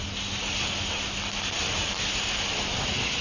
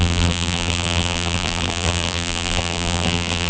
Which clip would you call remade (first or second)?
second